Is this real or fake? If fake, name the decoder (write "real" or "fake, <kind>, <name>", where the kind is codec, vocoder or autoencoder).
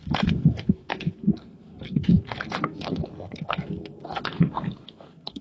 fake, codec, SNAC